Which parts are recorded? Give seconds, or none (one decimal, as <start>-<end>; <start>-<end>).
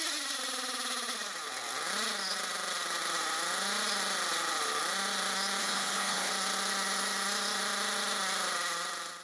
0.0-5.6; 6.3-9.2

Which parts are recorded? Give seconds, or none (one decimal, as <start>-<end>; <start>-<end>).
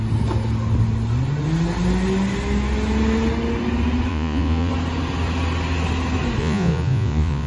0.0-4.1; 4.7-6.4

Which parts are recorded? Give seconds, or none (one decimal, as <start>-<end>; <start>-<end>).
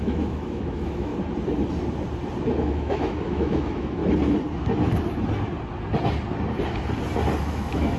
1.1-2.6; 4.0-7.4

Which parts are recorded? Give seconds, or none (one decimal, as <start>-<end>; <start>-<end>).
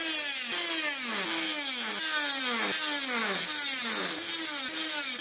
0.0-5.2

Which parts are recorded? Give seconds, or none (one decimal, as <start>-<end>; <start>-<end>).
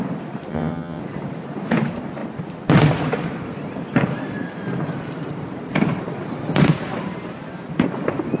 0.0-0.5; 1.0-8.4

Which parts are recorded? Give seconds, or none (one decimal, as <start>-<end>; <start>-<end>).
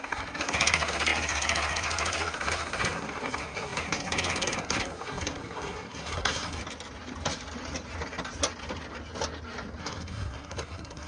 6.6-9.8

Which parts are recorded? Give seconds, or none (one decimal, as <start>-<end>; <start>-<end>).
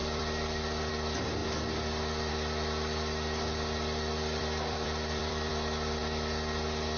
0.9-4.4; 5.5-7.0